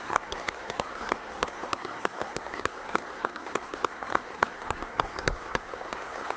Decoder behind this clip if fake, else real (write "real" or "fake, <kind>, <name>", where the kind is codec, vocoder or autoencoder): fake, codec, SNAC